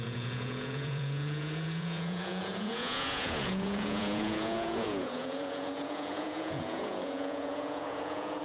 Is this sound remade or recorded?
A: remade